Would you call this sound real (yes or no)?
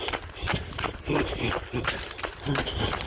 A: yes